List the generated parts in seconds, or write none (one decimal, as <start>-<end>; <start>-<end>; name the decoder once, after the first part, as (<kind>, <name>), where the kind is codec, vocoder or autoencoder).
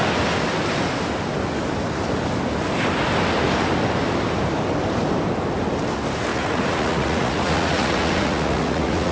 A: 6.3-9.1 (vocoder, Vocos)